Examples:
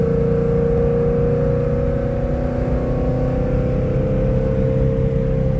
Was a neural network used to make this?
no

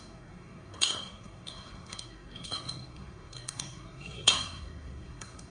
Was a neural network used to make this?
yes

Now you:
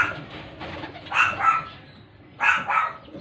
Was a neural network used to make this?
no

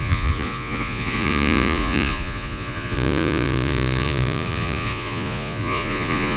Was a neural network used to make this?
yes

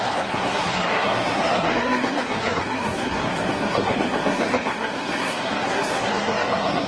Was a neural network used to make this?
yes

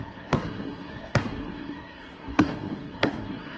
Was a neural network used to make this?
yes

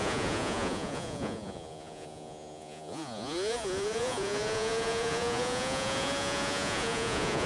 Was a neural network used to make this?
yes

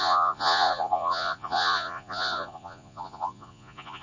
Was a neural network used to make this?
yes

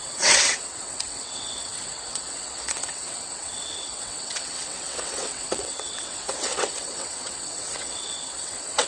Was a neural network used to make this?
yes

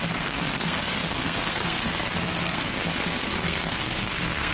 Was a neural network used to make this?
yes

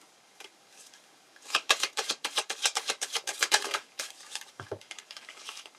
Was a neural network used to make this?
yes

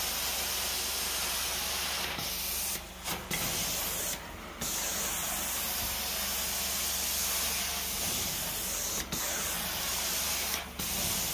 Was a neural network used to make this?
no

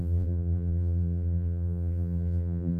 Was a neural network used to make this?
yes